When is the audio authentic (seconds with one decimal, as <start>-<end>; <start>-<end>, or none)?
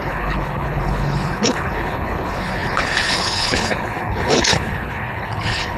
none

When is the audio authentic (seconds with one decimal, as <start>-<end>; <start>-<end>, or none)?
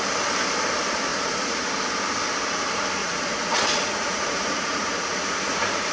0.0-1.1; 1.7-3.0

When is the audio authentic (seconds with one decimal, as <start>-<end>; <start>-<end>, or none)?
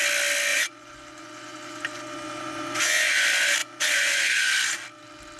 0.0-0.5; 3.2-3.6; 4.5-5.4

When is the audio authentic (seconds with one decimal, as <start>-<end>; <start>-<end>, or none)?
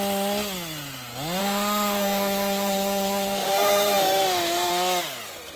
0.0-1.4; 4.7-5.6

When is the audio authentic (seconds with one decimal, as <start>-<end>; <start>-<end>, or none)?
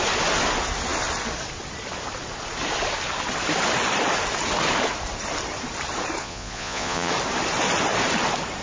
0.0-6.2; 7.1-8.6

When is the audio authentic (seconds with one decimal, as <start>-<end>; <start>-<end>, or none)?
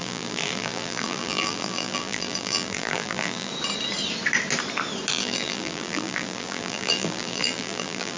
3.5-5.1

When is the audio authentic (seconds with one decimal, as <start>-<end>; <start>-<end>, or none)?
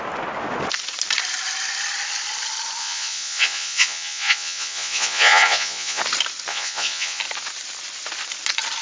0.0-2.8; 6.0-6.5; 7.2-8.8